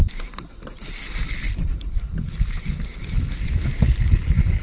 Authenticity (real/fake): real